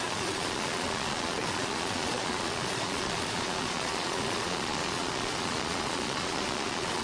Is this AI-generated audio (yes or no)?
yes